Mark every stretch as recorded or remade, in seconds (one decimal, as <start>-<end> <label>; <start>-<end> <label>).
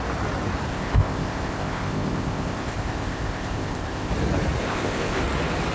0.0-0.7 recorded; 0.7-4.1 remade; 4.1-4.6 recorded; 4.6-5.2 remade; 5.2-5.7 recorded